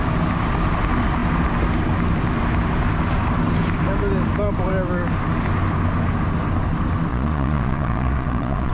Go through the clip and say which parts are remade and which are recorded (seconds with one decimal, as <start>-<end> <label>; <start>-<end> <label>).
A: 0.0-7.1 recorded; 7.1-8.7 remade